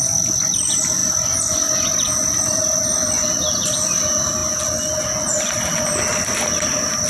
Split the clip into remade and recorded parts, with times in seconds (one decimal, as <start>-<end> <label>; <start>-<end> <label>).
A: 0.0-7.1 recorded